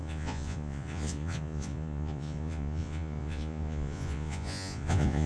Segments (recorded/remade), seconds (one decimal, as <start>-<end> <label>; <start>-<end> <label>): 0.0-5.3 remade